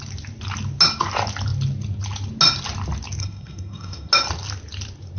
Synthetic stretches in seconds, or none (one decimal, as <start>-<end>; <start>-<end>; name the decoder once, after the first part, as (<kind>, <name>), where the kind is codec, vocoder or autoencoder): 3.2-4.1 (codec, SNAC)